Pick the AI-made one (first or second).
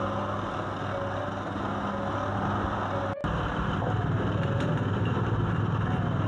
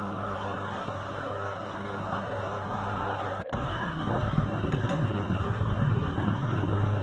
second